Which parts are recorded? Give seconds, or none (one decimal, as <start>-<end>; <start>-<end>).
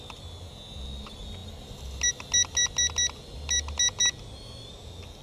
0.0-5.2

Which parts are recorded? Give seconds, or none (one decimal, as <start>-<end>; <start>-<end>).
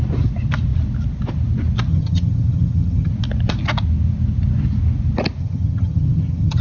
0.0-1.9; 3.1-5.4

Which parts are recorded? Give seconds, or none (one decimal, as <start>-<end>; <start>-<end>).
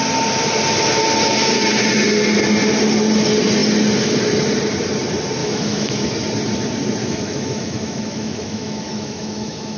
0.0-5.4; 6.0-7.0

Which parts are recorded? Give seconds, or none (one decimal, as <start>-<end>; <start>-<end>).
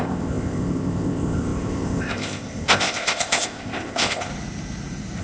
4.3-5.2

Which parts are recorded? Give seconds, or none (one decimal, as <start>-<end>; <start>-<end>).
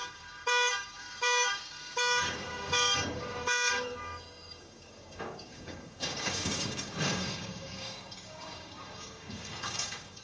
none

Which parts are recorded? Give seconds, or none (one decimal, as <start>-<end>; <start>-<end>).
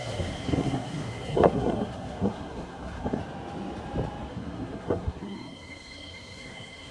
3.2-4.3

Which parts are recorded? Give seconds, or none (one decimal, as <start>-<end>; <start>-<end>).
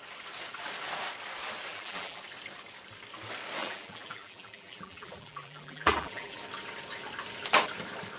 0.0-1.7; 2.2-3.6; 6.4-8.2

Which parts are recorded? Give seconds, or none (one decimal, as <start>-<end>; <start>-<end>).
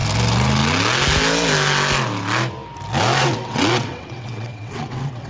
0.0-3.2